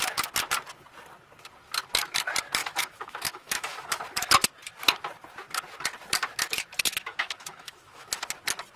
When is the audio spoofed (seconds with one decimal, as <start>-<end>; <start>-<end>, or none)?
2.6-4.0; 6.9-8.1

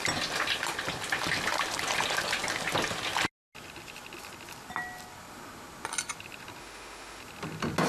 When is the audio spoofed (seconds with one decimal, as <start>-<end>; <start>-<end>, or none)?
6.6-7.2

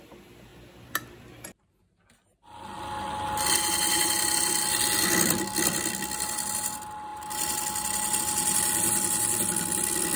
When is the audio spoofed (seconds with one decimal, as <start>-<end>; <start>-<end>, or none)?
none

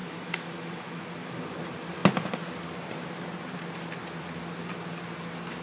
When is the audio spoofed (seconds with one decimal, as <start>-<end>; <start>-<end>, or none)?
0.0-1.0

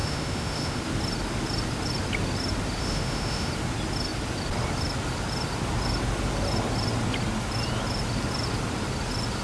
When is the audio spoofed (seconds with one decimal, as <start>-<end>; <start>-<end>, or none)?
0.0-0.8; 2.8-3.5

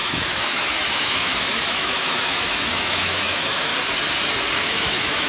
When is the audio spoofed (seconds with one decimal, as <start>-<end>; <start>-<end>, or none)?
0.0-3.7; 4.6-5.3

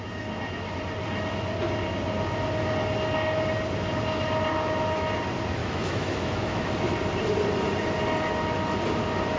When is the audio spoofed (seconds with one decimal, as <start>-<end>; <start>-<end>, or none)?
5.6-6.6

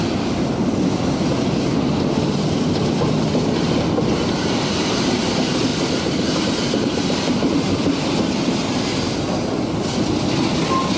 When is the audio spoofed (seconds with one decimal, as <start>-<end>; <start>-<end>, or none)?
none